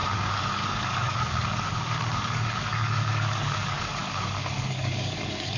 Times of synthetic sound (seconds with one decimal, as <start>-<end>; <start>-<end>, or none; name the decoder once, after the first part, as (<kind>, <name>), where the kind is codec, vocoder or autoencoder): 0.0-5.6 (codec, DAC)